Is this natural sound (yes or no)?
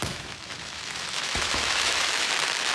no